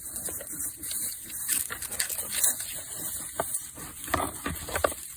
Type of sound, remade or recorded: recorded